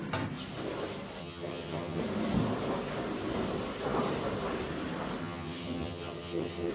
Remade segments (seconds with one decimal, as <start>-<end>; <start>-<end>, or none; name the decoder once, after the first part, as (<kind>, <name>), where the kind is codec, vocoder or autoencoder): 1.2-2.0 (vocoder, HiFi-GAN); 5.2-6.7